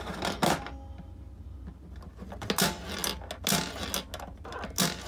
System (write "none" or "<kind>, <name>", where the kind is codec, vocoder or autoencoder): none